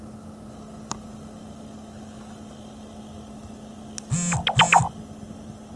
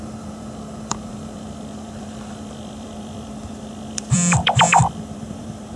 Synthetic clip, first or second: second